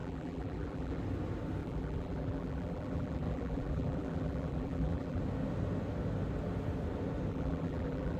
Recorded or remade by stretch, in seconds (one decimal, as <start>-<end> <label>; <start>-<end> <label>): 0.0-1.0 remade; 1.0-1.6 recorded; 1.6-5.2 remade; 5.2-7.3 recorded; 7.3-8.2 remade